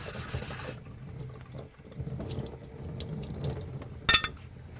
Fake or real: real